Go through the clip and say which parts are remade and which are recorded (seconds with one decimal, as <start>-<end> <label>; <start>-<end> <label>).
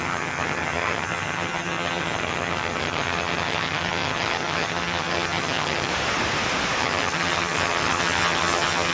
0.0-5.9 remade; 5.9-6.8 recorded; 6.8-8.9 remade